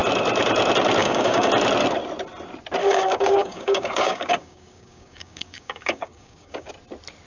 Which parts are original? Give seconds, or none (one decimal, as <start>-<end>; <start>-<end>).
0.0-1.0; 1.5-2.8; 6.7-7.3